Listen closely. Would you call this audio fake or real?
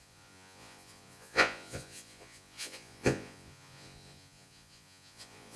fake